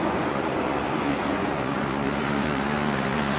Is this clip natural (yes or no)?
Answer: no